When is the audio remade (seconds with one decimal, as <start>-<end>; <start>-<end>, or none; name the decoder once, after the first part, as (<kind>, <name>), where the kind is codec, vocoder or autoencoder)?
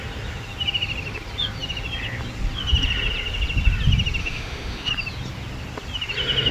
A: 4.2-4.9 (autoencoder, DAC-VAE)